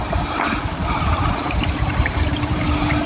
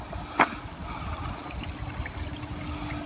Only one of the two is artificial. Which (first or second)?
first